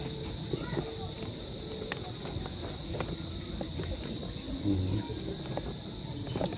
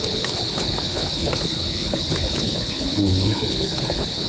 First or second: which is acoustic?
first